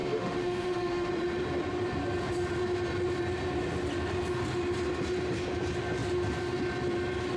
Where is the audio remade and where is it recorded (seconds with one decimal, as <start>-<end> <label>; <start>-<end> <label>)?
0.0-1.1 remade; 1.1-7.4 recorded